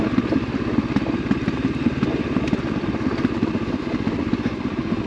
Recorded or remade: recorded